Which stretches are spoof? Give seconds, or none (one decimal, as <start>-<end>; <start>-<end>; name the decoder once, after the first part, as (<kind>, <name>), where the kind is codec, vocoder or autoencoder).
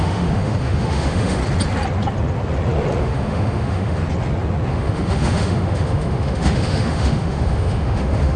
0.0-1.4 (autoencoder, DAC-VAE); 3.0-4.0; 4.7-8.4